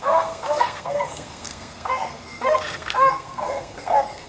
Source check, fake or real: fake